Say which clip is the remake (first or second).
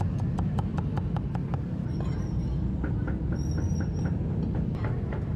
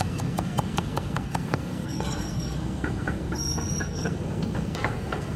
second